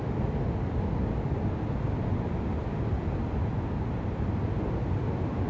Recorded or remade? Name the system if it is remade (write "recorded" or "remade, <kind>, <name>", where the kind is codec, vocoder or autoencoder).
recorded